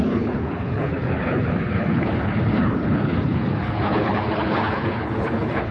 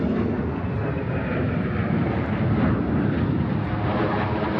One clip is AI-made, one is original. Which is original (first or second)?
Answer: second